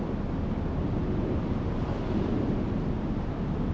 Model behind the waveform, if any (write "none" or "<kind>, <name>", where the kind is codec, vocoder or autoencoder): none